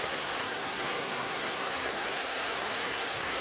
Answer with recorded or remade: remade